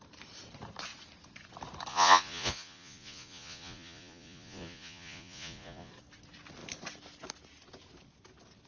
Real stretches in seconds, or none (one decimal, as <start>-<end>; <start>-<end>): 0.0-1.9; 5.9-8.7